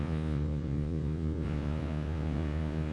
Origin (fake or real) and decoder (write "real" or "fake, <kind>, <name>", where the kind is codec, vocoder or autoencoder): fake, vocoder, Vocos